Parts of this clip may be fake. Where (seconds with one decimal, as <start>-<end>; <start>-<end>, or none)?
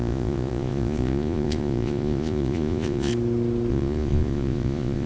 0.0-3.1; 3.7-5.1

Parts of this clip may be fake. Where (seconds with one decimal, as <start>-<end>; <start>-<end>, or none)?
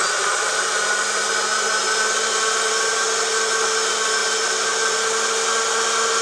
none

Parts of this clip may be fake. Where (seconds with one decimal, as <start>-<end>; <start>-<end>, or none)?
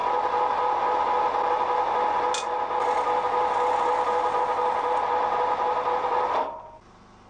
none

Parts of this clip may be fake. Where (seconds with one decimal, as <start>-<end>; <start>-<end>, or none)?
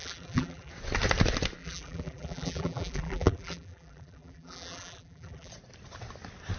0.0-0.7; 1.6-5.5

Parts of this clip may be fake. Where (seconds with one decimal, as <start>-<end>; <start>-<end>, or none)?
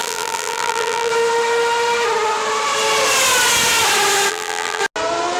0.0-1.1; 4.3-4.8